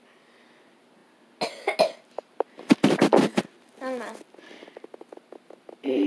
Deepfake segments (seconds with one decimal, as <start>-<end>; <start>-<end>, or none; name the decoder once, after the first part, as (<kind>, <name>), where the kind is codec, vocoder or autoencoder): none